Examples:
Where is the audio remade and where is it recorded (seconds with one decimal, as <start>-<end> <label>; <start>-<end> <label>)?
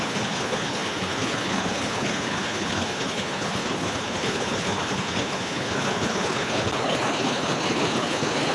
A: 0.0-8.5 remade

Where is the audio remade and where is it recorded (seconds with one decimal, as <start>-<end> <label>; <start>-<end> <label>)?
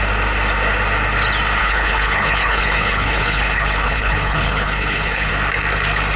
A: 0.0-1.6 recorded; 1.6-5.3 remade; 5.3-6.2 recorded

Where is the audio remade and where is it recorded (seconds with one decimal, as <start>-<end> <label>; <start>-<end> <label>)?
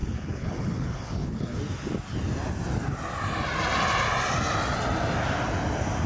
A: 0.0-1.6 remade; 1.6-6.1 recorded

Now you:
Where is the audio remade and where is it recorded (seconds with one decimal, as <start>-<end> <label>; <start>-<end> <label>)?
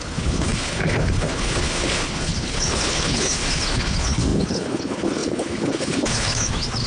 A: 0.0-6.9 remade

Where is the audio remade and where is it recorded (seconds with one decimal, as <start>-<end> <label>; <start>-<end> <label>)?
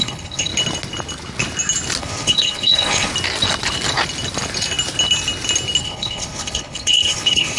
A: 0.0-0.5 remade; 0.5-2.0 recorded; 2.0-3.1 remade; 3.1-5.8 recorded; 5.8-7.6 remade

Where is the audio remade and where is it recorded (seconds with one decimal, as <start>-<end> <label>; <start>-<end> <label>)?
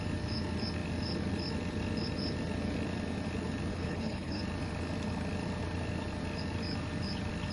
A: 0.0-3.7 recorded; 3.7-4.4 remade; 4.4-7.5 recorded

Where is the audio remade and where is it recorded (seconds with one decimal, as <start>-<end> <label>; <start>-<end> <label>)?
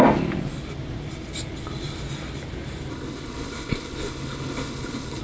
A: 0.0-2.9 recorded; 2.9-5.2 remade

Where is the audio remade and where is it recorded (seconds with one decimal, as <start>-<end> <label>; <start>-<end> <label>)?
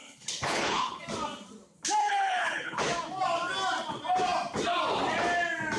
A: 0.0-1.0 remade; 1.0-2.0 recorded; 2.0-2.8 remade; 2.8-5.8 recorded